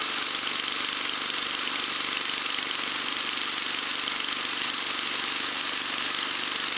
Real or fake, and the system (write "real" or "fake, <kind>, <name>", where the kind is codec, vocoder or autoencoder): real